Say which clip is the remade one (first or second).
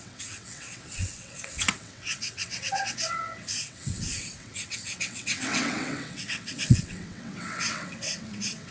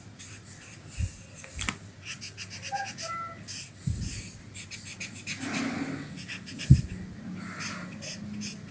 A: first